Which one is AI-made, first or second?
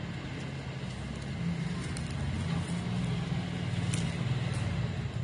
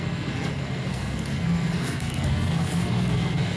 second